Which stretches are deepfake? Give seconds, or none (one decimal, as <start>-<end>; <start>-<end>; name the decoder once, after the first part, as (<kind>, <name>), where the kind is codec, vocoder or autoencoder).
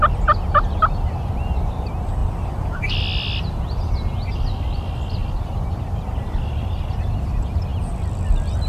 2.2-3.0 (vocoder, BigVGAN v2); 5.2-7.1; 7.7-8.7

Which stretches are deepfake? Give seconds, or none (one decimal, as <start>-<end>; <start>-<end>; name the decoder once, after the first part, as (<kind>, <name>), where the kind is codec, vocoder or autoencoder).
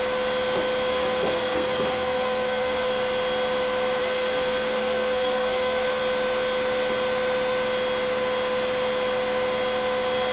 0.9-2.9 (codec, SNAC); 4.0-6.0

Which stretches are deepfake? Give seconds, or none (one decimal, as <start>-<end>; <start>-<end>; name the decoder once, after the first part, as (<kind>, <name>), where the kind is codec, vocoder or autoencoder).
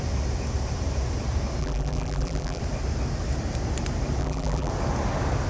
1.6-2.6 (vocoder, BigVGAN v2); 4.2-4.7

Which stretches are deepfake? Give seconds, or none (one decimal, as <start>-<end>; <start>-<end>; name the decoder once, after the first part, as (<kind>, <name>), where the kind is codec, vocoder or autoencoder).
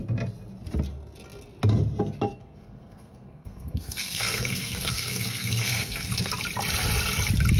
2.4-6.3 (codec, SNAC)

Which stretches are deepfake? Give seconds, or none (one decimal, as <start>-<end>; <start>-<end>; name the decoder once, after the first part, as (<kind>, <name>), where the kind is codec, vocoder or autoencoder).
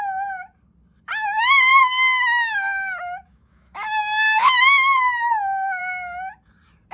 1.7-5.8 (autoencoder, DAC-VAE)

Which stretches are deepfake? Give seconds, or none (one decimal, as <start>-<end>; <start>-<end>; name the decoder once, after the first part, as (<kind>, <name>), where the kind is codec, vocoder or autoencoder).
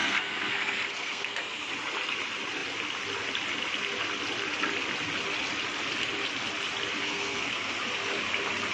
0.0-1.7 (codec, SNAC); 7.0-7.7